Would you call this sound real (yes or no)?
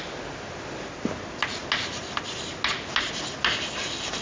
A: yes